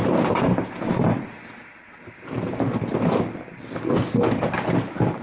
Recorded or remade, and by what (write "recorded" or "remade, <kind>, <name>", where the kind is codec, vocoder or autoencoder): recorded